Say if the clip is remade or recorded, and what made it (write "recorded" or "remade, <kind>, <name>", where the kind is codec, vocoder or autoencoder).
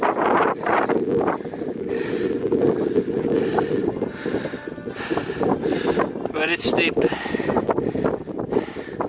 recorded